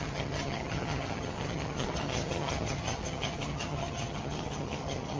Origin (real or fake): fake